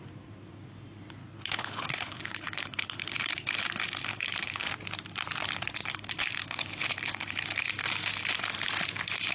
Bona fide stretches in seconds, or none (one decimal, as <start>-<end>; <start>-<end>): 0.0-1.2; 3.3-4.1; 4.7-6.4; 7.6-9.3